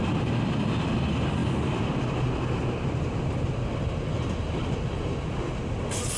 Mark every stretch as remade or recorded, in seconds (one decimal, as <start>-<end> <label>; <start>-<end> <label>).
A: 0.0-6.2 recorded